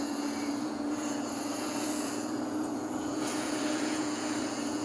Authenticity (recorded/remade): remade